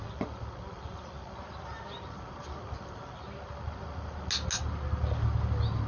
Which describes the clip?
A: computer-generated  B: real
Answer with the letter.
B